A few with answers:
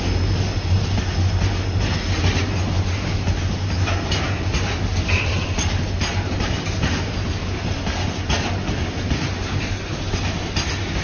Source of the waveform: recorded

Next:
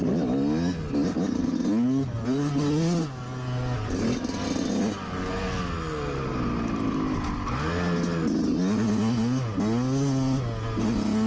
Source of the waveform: recorded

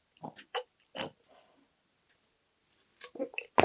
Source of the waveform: recorded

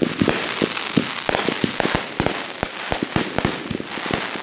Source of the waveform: recorded